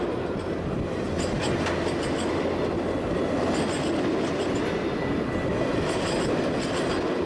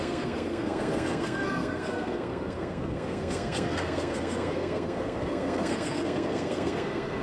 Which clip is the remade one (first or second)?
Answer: second